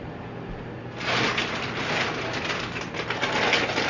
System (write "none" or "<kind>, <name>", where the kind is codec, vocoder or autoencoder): none